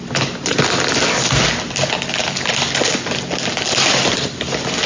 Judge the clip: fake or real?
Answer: real